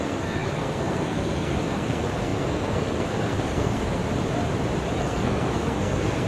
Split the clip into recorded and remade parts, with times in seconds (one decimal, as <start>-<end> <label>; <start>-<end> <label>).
0.0-4.0 remade; 4.0-5.0 recorded; 5.0-6.3 remade